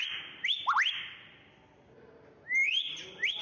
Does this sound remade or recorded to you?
recorded